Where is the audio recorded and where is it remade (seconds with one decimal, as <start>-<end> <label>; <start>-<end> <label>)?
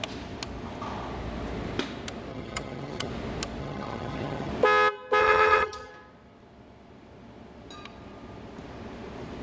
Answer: 0.0-2.3 recorded; 2.3-3.1 remade; 3.1-3.6 recorded; 3.6-4.5 remade; 4.5-5.2 recorded; 5.2-5.9 remade; 5.9-9.4 recorded